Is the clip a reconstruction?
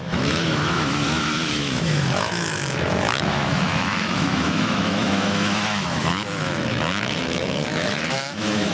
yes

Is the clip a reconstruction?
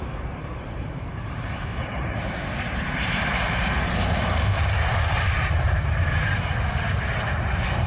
yes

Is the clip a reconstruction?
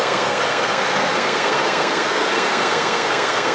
yes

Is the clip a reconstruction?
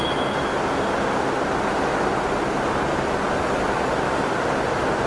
no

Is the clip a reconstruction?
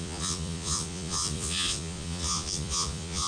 yes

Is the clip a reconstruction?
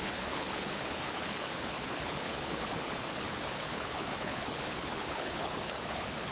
yes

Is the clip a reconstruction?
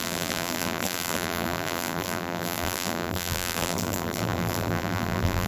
yes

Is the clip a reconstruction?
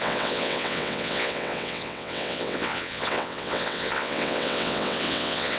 yes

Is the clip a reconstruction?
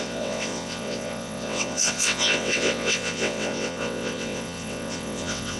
yes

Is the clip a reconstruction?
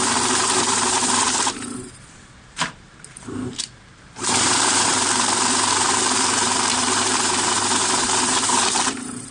yes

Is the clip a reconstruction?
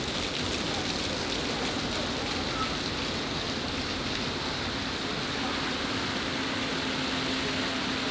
no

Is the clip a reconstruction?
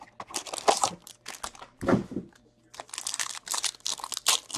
no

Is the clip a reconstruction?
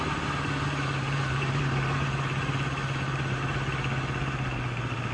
no